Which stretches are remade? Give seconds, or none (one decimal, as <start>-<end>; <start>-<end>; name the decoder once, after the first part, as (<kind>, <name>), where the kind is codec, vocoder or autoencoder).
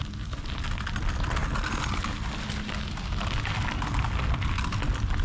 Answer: none